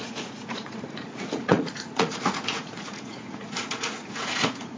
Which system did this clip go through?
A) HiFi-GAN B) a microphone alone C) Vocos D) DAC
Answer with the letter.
C